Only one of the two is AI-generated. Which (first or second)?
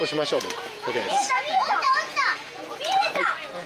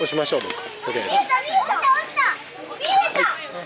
first